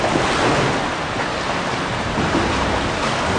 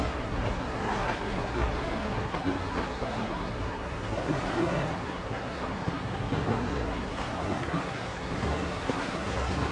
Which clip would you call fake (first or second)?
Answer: second